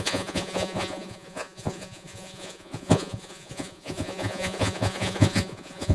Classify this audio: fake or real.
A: fake